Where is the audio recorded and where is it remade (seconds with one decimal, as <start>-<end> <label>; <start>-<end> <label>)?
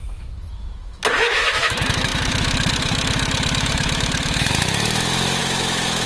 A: 0.0-6.1 remade